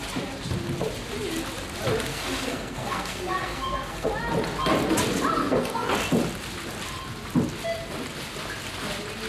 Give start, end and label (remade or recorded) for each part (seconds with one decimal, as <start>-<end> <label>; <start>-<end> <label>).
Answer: 0.0-2.1 recorded; 2.1-4.1 remade; 4.1-5.4 recorded; 5.4-5.9 remade; 5.9-9.3 recorded